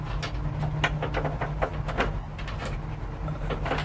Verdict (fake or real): real